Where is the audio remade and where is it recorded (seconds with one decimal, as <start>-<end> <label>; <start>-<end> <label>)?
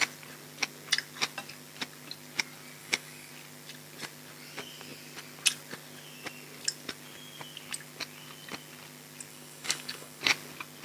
0.0-2.8 recorded; 2.8-3.3 remade; 3.3-9.3 recorded; 9.3-10.2 remade; 10.2-10.8 recorded